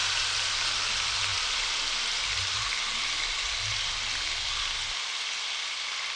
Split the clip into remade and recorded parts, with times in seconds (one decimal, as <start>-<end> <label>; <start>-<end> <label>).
0.0-6.2 recorded